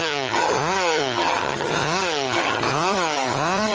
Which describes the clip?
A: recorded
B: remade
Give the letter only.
B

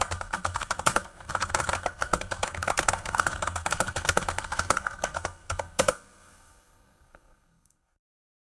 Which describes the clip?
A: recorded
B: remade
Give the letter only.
B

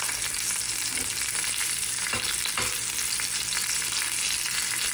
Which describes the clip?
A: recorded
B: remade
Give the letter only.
A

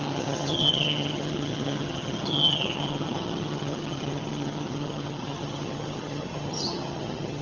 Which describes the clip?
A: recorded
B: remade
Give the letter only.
B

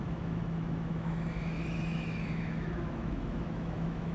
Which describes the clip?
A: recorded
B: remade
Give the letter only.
B